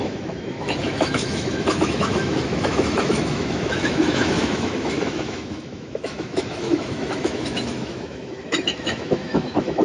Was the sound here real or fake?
fake